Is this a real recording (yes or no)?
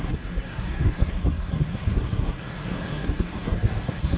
no